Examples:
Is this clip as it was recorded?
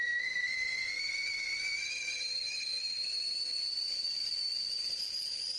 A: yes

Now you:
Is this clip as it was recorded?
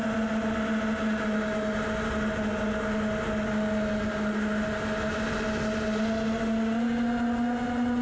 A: yes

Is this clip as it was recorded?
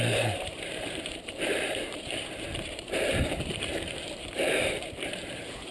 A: no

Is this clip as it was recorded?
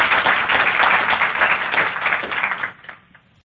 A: yes